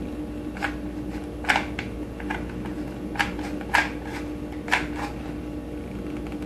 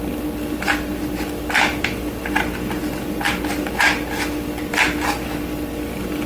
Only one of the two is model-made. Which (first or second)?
second